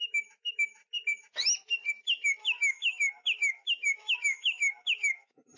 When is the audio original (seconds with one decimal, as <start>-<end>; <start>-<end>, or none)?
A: 0.8-2.4